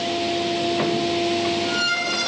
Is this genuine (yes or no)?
yes